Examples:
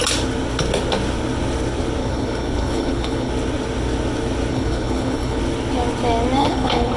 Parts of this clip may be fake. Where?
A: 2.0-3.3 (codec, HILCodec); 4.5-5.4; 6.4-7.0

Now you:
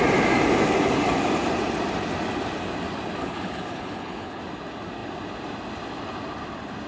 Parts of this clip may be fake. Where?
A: 3.2-4.4 (codec, HILCodec)

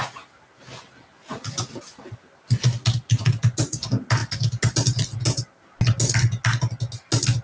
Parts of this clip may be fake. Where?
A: none

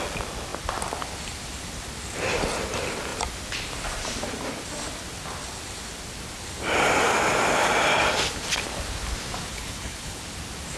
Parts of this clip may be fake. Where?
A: 9.5-10.2 (codec, HILCodec)

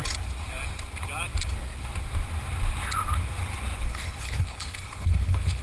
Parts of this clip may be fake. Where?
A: 3.9-5.6 (codec, HILCodec)